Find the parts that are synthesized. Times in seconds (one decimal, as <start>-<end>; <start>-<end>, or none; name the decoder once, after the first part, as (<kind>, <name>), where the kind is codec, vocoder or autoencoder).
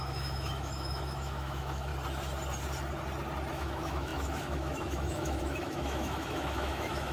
0.0-1.9 (autoencoder, DAC-VAE); 3.5-7.1